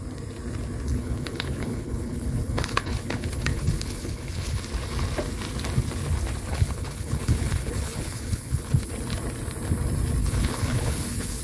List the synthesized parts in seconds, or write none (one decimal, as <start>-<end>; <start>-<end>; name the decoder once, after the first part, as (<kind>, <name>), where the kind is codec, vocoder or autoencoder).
0.9-4.6 (codec, HILCodec); 6.5-8.9; 10.2-11.4